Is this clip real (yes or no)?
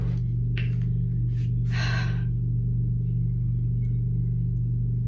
yes